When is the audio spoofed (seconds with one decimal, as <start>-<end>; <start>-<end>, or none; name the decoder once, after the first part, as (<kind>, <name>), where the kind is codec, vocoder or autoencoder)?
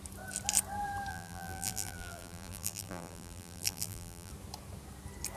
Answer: 1.1-4.3 (vocoder, BigVGAN v2)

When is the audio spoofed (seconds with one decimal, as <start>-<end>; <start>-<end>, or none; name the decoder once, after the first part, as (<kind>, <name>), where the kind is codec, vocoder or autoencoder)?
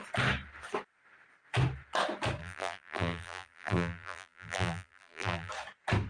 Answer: 2.4-5.5 (vocoder, BigVGAN v2)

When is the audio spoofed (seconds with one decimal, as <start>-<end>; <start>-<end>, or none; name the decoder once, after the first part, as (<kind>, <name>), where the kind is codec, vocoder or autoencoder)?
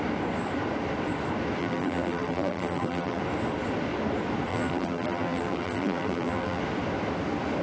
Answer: 1.6-3.2 (vocoder, BigVGAN v2); 4.5-6.6